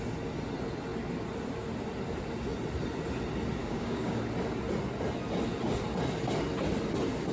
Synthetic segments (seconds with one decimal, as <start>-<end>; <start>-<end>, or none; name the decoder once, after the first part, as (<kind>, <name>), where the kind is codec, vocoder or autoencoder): 3.6-4.2 (codec, DAC)